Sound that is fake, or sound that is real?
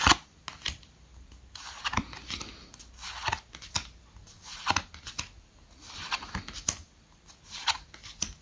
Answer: real